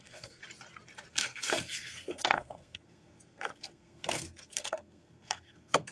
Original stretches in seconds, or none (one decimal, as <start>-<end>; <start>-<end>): 0.4-1.1